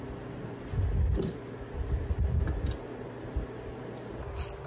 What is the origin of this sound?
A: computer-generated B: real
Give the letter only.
B